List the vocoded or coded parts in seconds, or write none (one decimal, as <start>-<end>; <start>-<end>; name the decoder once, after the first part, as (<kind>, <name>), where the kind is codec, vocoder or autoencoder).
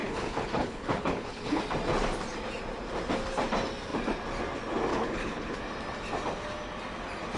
0.0-1.6 (codec, HILCodec); 4.9-5.6